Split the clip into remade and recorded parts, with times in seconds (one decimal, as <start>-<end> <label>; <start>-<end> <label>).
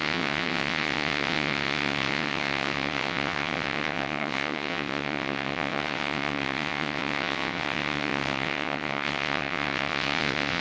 0.0-10.6 remade